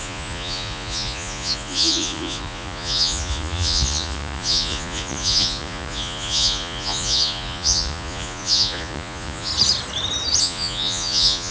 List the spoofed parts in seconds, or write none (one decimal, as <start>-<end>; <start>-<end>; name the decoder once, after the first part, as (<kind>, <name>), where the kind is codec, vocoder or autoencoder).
0.0-9.5 (vocoder, Vocos); 10.4-11.5